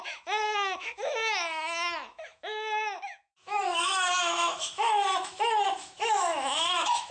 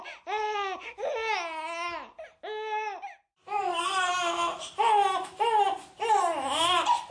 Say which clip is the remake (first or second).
first